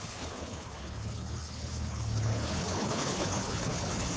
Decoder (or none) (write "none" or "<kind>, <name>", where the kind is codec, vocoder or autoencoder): codec, HILCodec